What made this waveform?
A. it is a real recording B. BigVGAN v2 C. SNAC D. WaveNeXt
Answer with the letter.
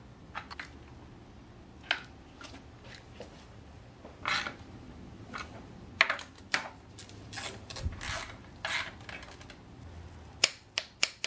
A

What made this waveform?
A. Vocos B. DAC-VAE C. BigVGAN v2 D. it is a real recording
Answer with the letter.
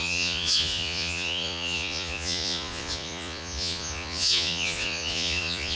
A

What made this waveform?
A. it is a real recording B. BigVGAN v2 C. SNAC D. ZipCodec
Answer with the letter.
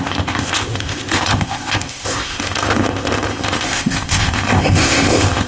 D